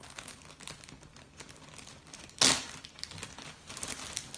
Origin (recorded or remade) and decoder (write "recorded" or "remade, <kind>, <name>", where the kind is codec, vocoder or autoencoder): recorded